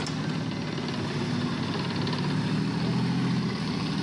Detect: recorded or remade recorded